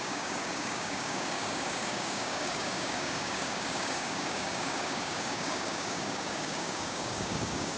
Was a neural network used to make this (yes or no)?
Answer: yes